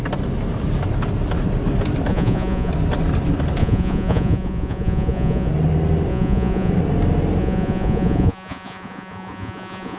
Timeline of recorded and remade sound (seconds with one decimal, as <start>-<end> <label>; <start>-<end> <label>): 0.0-2.1 recorded; 2.1-2.7 remade; 2.7-3.6 recorded; 3.6-5.5 remade; 5.5-6.1 recorded; 6.1-6.7 remade; 6.7-7.4 recorded; 7.4-10.0 remade